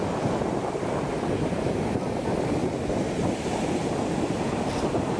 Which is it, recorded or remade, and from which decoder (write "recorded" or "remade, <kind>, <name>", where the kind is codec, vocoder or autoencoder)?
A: recorded